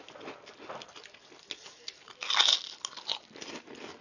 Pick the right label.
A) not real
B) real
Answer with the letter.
B